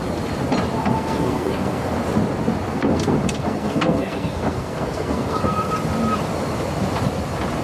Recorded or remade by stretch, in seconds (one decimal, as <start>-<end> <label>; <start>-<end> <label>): 0.0-0.8 recorded; 0.8-1.9 remade; 1.9-2.7 recorded; 2.7-5.7 remade; 5.7-7.6 recorded